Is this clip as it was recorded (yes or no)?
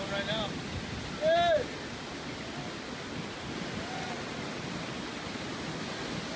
yes